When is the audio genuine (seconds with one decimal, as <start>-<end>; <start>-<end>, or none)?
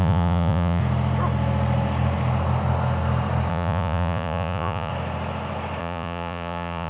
0.8-3.5; 4.9-5.8